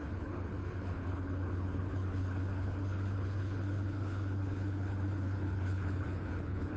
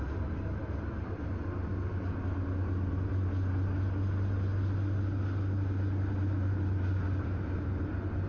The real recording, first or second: second